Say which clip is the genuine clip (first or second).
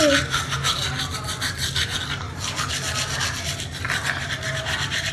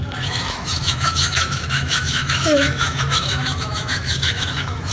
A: first